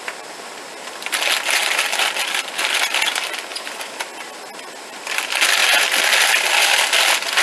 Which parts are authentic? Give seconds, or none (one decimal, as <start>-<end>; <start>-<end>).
0.0-3.5; 4.1-5.6; 6.5-7.4